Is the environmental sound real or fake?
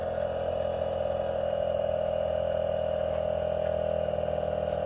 real